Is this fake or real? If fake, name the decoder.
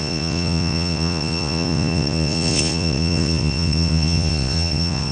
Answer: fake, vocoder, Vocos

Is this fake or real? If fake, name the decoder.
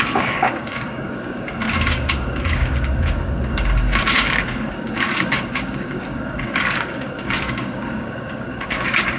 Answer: fake, codec, DAC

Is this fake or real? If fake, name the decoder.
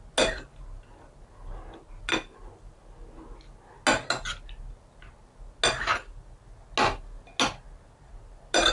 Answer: real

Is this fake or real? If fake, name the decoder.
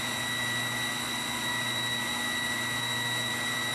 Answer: real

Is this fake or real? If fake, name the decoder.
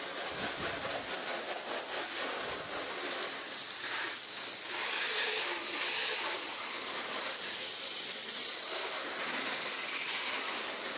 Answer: real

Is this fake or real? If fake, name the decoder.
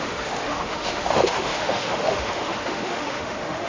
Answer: fake, autoencoder, DAC-VAE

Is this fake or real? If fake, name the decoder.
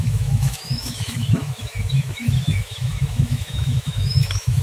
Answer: fake, autoencoder, DAC-VAE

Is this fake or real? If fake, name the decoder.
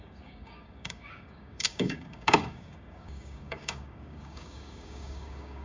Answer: fake, codec, DAC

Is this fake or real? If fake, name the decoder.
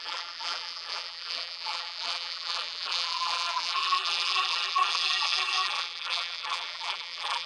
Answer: fake, vocoder, BigVGAN v2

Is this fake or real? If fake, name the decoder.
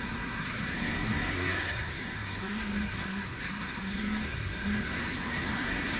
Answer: fake, codec, SNAC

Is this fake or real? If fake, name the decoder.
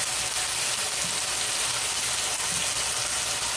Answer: real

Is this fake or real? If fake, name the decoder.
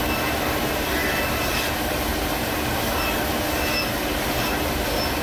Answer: real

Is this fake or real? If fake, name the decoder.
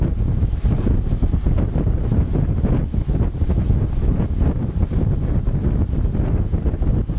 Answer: real